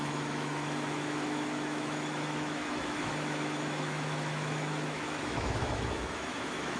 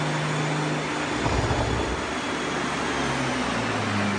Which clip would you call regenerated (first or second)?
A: first